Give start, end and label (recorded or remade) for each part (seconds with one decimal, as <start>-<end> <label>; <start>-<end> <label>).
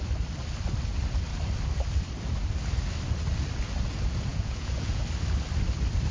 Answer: 0.0-4.3 recorded; 4.3-5.0 remade; 5.0-6.1 recorded